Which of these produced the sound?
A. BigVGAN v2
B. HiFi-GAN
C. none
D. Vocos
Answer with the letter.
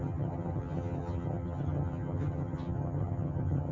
B